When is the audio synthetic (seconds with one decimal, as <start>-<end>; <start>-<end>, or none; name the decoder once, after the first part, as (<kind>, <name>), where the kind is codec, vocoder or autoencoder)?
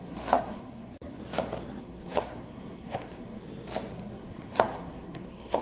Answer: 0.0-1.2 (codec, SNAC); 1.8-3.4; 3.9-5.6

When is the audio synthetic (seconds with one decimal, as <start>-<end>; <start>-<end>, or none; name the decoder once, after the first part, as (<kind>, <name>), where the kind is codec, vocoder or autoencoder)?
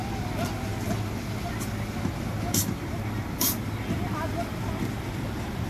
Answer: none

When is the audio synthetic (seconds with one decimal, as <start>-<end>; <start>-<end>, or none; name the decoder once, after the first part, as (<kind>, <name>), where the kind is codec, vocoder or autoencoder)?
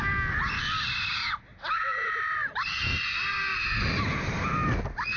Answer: none